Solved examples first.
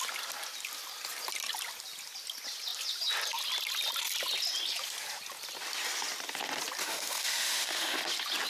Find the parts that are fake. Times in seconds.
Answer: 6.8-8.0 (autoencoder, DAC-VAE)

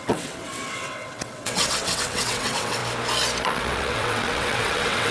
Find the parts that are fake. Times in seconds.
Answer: 0.0-2.8 (vocoder, WaveNeXt); 3.4-5.1

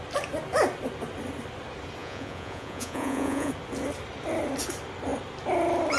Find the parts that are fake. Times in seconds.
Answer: 2.0-3.5 (vocoder, Vocos)